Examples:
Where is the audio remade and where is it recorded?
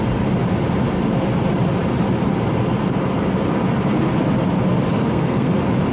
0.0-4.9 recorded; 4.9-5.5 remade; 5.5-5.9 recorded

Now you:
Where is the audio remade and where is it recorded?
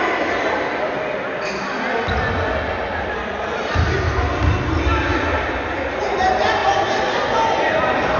0.0-8.2 recorded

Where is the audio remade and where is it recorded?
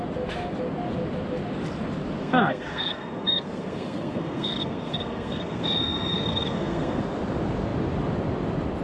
0.0-2.2 recorded; 2.2-7.0 remade; 7.0-8.8 recorded